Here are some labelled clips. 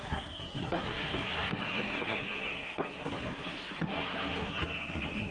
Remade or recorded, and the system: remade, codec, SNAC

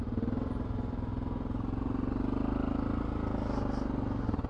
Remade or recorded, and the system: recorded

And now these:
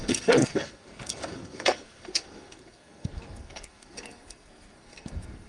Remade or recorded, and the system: remade, codec, SNAC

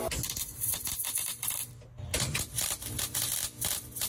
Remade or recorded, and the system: recorded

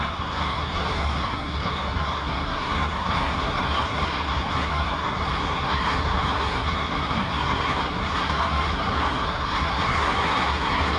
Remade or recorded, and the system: remade, codec, SNAC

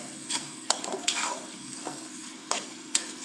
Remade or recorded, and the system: remade, codec, SNAC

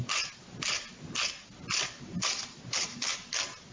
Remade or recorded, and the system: recorded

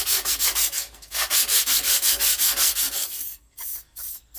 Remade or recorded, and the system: remade, codec, SNAC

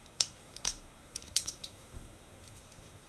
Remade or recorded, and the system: remade, codec, SNAC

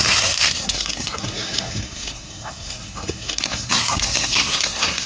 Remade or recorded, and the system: remade, codec, SNAC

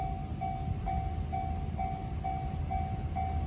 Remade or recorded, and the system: recorded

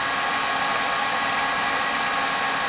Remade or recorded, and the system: recorded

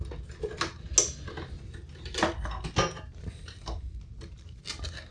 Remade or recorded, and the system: recorded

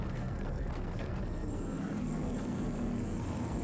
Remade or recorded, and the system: remade, codec, SNAC